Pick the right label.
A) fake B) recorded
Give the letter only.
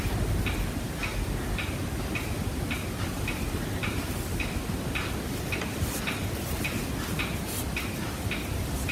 B